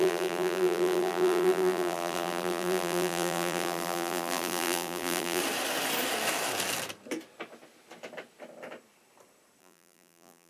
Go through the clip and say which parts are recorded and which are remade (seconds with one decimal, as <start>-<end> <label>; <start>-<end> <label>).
0.0-5.4 remade; 5.4-9.6 recorded; 9.6-10.5 remade